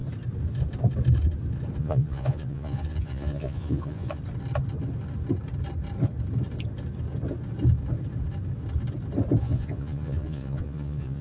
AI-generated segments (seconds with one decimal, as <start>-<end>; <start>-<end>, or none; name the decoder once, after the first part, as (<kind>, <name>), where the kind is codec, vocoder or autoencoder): 1.8-4.2 (vocoder, Vocos); 9.4-11.2